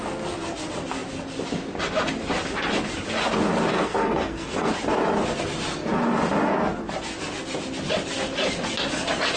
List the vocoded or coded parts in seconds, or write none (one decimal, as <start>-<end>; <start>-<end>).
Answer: 3.7-4.7